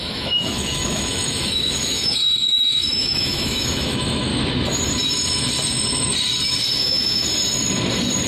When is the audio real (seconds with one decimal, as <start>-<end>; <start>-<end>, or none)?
4.3-6.8; 7.3-8.3